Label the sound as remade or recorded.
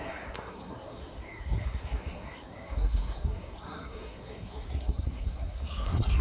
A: remade